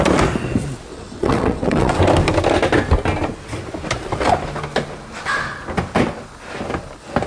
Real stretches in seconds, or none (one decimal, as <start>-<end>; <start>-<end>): 0.0-0.9; 2.0-7.3